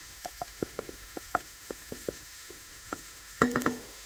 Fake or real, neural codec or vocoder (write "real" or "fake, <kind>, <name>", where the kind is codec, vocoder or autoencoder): fake, autoencoder, DAC-VAE